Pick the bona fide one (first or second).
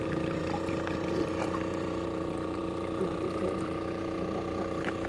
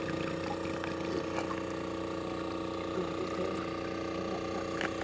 second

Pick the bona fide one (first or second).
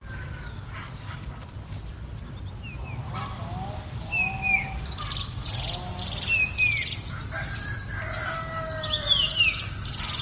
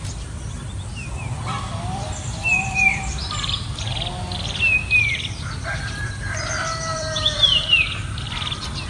first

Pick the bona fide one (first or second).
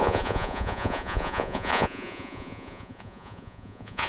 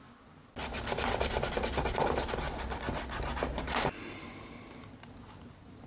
second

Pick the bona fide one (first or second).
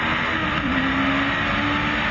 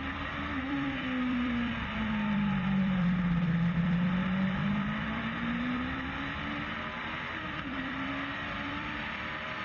first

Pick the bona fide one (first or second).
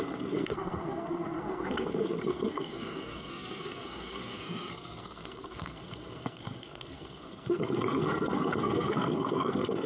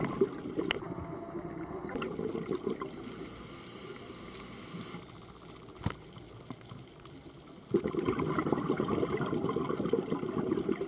second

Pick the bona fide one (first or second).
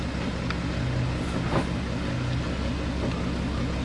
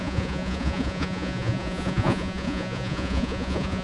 first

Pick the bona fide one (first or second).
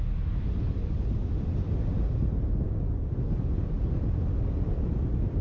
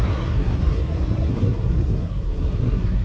first